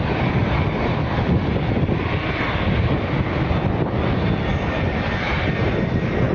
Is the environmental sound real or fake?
real